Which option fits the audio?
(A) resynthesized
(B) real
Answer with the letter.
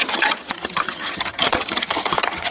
A